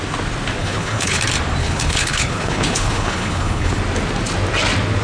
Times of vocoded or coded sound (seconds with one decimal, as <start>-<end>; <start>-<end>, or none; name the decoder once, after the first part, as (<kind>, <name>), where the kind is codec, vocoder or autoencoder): 0.6-1.2 (codec, HILCodec); 1.6-3.8